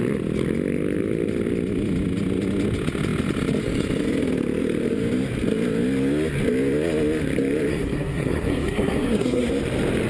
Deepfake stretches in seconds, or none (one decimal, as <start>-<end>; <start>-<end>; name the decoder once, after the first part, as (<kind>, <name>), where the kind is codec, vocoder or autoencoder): 7.7-9.5 (codec, SNAC)